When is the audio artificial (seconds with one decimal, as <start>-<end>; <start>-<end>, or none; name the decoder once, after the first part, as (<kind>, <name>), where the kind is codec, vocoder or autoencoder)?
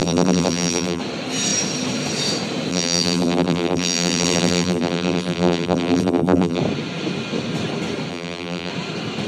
0.0-1.0 (vocoder, BigVGAN v2); 2.7-6.6; 8.1-8.7